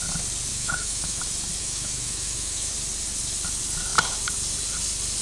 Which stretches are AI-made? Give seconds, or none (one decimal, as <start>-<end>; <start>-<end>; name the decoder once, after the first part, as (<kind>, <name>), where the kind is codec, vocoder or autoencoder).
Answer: 0.5-1.2 (autoencoder, DAC-VAE); 1.6-2.7

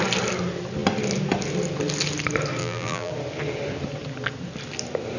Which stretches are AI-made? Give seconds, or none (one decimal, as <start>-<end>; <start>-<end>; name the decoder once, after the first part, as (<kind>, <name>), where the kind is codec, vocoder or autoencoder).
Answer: 2.6-3.1 (vocoder, BigVGAN v2)

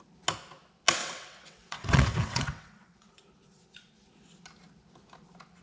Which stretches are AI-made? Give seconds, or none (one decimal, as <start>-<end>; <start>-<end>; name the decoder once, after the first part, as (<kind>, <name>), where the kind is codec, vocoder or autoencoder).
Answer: 1.0-3.1 (vocoder, WaveNeXt)

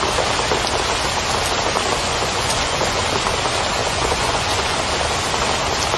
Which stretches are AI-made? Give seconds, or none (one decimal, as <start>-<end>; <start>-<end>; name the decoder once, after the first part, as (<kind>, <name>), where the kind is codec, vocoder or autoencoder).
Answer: 2.0-3.0 (vocoder, Vocos); 3.8-4.8